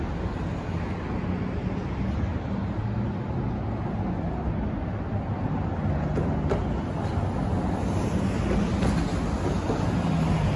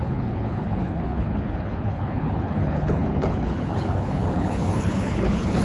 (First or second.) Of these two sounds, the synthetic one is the second